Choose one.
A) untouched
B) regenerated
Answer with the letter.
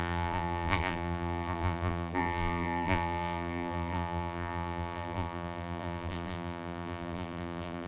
B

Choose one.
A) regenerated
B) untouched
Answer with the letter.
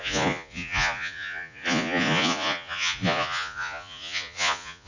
A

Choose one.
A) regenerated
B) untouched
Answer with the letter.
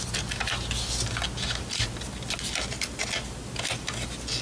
B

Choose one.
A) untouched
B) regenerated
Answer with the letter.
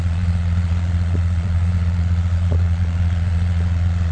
B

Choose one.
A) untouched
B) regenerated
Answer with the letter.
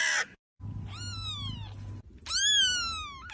A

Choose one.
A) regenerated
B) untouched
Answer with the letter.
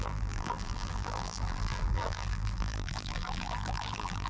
A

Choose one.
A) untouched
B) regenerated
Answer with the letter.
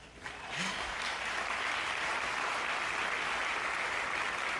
A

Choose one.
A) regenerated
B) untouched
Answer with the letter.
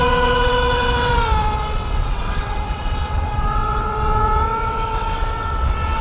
A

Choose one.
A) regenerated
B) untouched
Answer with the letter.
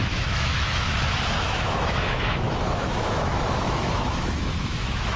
A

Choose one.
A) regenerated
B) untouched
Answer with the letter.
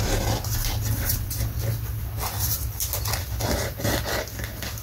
B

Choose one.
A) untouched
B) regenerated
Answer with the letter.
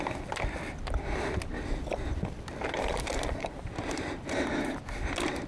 A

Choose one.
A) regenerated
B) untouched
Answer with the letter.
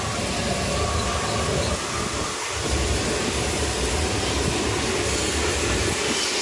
B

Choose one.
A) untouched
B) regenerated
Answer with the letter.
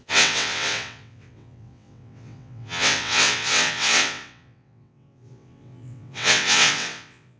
B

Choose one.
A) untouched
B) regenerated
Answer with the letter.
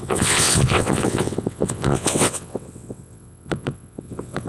B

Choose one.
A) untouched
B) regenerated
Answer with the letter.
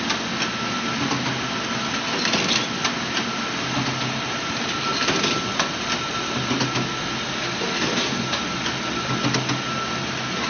A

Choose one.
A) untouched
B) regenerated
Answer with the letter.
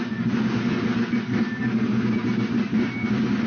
A